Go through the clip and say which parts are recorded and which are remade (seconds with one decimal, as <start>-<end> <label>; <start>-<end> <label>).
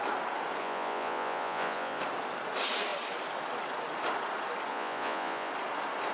0.0-0.6 recorded; 0.6-2.0 remade; 2.0-4.7 recorded; 4.7-5.5 remade; 5.5-6.1 recorded